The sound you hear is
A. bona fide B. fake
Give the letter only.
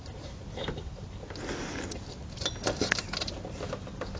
A